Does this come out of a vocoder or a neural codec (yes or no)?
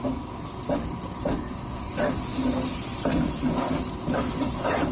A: no